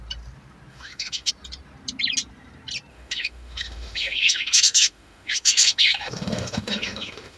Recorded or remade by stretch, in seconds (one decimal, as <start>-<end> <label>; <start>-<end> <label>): 0.0-0.7 recorded; 0.7-1.3 remade; 1.3-2.9 recorded; 2.9-7.4 remade